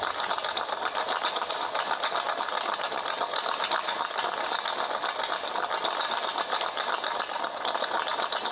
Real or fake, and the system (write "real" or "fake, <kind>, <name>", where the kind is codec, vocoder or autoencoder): real